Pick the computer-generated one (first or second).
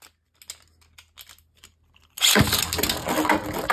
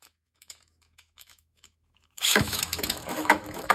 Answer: second